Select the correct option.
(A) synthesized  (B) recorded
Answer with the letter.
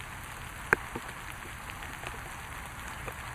B